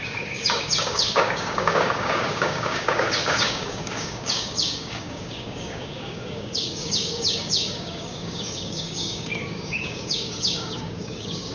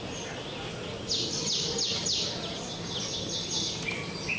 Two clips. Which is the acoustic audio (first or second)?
second